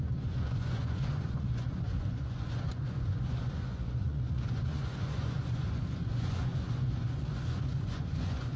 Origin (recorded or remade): remade